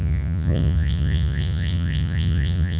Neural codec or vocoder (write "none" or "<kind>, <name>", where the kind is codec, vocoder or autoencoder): vocoder, Vocos